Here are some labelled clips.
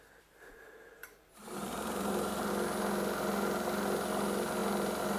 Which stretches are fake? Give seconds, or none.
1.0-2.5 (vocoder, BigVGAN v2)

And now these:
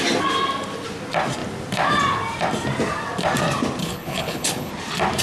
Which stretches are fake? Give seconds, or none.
3.8-4.7 (codec, HILCodec)

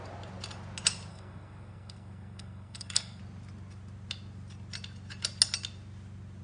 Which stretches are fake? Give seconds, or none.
1.1-3.2 (codec, SNAC)

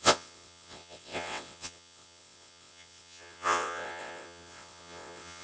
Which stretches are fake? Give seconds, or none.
0.0-5.4 (vocoder, WaveNeXt)

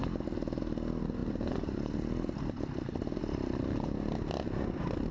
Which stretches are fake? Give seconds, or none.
1.2-3.2 (vocoder, BigVGAN v2)

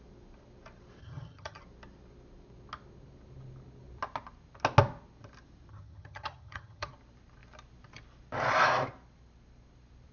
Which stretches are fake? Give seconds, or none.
1.0-1.6 (vocoder, HiFi-GAN); 5.7-6.9

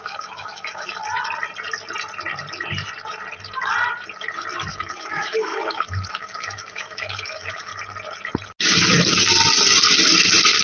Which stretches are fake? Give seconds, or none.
0.0-1.0 (autoencoder, DAC-VAE); 4.7-7.7